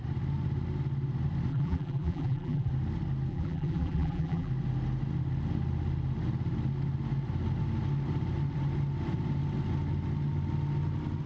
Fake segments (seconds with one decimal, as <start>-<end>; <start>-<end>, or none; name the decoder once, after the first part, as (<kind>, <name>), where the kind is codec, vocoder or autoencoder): 1.5-2.7 (vocoder, BigVGAN v2); 3.3-4.5